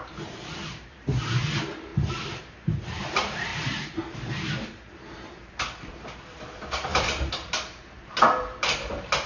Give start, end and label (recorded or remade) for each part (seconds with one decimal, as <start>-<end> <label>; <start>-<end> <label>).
0.0-9.3 remade